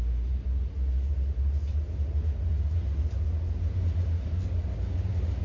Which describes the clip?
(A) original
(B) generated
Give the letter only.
A